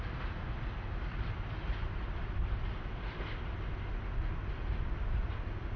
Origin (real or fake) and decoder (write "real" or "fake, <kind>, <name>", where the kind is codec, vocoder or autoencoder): real